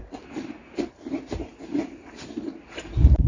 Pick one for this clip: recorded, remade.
remade